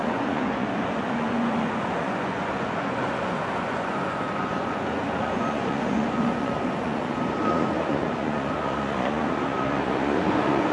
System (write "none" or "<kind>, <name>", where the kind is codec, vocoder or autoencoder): vocoder, Vocos